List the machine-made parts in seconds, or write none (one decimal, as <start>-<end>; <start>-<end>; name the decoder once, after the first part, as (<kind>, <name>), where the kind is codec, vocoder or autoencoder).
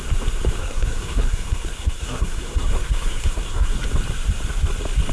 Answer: 0.6-3.7 (codec, SNAC)